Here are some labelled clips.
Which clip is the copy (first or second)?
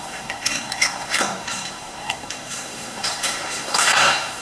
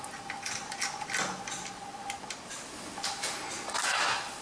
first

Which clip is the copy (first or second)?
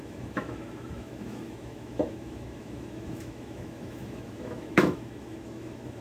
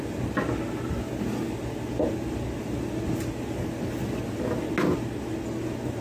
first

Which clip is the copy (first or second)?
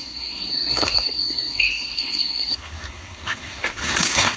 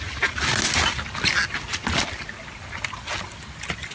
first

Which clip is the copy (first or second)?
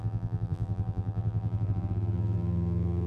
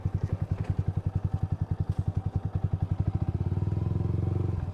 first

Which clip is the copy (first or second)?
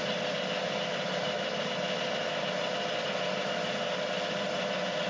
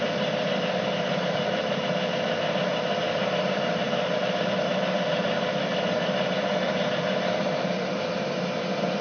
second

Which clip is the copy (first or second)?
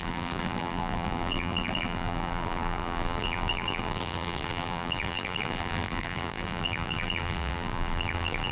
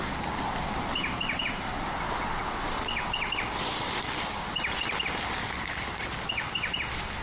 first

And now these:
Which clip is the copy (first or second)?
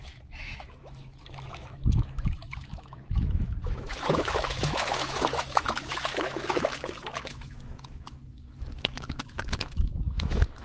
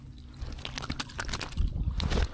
first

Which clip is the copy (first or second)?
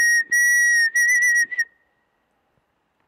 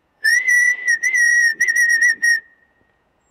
second